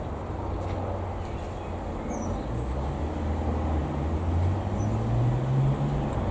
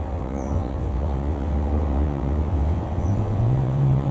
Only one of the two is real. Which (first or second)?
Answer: first